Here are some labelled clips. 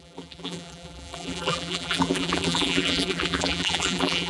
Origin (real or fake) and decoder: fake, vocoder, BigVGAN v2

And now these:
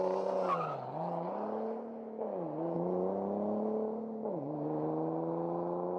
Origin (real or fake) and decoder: real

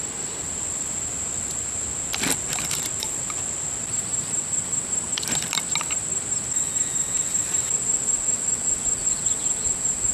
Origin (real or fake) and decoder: real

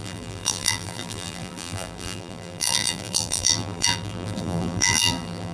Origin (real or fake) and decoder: fake, vocoder, BigVGAN v2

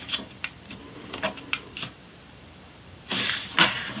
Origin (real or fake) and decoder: fake, vocoder, BigVGAN v2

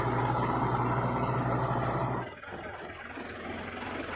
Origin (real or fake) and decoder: real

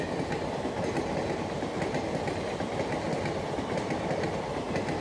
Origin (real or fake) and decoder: real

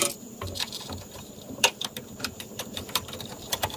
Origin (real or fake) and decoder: fake, vocoder, BigVGAN v2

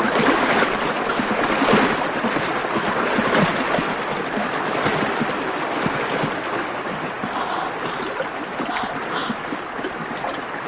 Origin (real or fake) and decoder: real